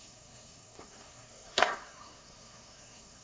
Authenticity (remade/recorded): remade